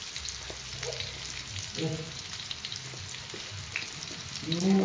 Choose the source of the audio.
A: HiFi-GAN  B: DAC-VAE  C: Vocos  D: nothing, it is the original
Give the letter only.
D